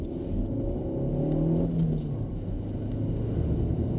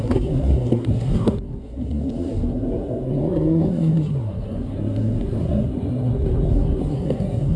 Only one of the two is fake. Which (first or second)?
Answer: second